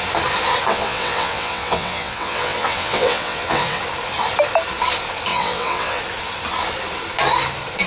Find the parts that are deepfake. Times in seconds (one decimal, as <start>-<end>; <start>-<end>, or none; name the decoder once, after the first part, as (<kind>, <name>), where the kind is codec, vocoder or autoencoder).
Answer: 0.7-3.8 (vocoder, WaveNeXt); 5.3-6.0